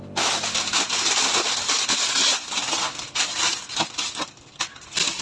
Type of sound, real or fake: real